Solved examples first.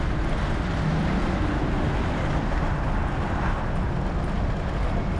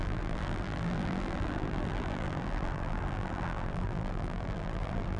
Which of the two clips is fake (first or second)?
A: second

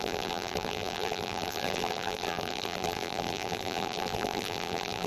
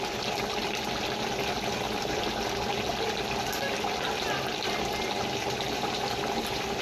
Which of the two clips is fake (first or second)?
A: first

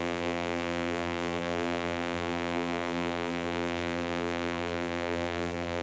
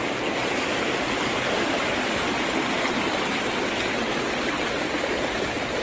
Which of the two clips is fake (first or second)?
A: first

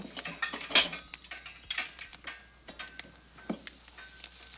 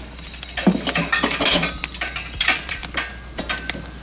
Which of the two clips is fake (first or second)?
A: second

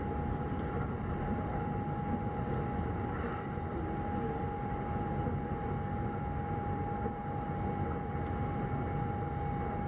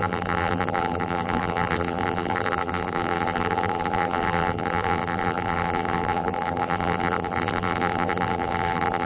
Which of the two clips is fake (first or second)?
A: second